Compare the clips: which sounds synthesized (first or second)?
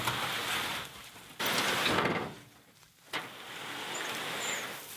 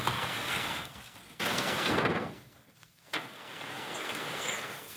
second